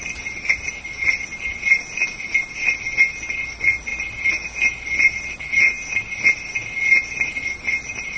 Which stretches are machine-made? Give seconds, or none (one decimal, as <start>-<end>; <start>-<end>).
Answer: none